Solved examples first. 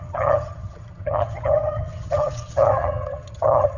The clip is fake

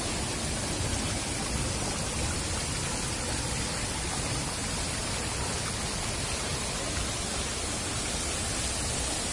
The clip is real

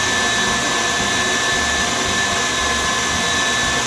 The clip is real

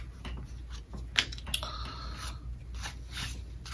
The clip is real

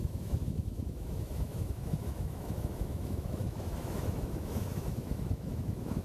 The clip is fake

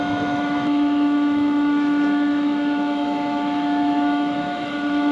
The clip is fake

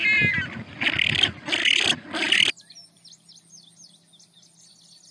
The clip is real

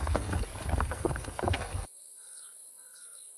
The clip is fake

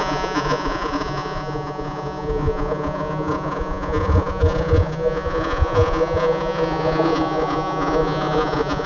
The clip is fake